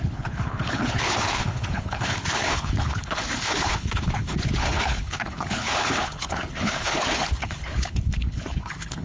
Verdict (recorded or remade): remade